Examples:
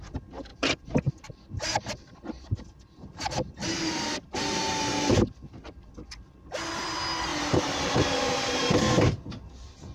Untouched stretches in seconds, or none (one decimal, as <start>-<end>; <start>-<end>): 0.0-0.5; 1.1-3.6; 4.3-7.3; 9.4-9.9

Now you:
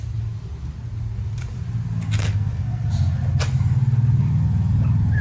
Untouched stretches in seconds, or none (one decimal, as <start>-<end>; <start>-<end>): 0.0-2.2; 2.9-5.2

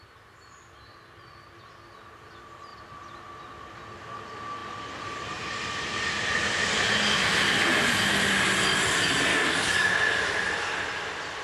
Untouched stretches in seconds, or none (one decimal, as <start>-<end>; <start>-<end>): 0.0-9.3; 9.9-11.4

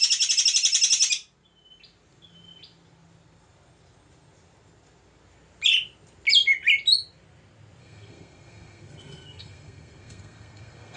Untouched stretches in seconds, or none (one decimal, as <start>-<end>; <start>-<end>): 0.0-7.8